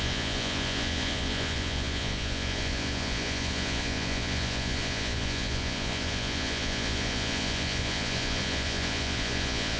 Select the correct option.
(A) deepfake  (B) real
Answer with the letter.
A